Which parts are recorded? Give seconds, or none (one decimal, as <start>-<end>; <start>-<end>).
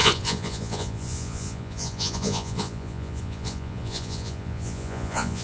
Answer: none